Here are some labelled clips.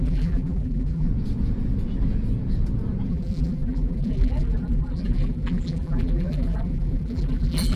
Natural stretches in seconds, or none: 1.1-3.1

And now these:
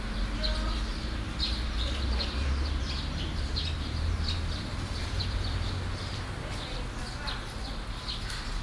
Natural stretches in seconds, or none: 0.0-0.9; 6.0-8.6

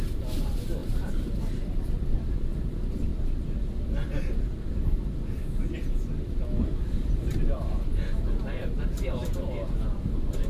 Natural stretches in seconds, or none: 3.1-6.8